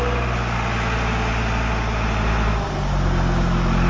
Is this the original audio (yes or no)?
yes